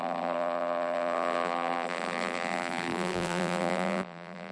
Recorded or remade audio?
remade